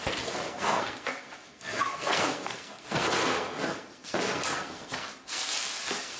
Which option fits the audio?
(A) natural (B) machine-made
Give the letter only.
B